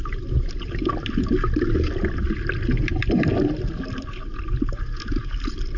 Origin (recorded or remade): recorded